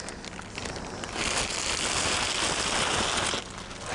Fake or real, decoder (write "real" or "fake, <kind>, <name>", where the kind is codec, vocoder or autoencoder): real